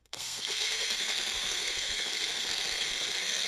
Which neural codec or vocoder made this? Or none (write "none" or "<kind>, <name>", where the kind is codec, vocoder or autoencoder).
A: codec, SNAC